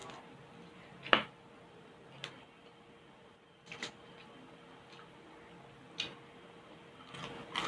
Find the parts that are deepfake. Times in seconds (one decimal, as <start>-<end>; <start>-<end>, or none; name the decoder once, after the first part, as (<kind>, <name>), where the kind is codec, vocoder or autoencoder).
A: none